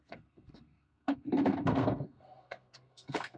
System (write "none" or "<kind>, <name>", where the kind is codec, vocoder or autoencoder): codec, SNAC